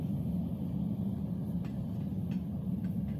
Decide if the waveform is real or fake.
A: real